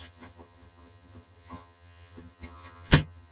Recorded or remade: remade